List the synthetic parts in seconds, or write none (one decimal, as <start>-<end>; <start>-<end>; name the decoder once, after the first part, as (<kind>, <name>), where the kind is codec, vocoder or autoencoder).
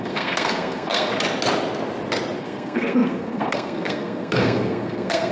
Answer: 0.0-1.1 (codec, SNAC); 2.4-5.3